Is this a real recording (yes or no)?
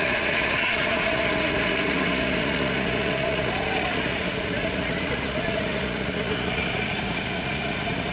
no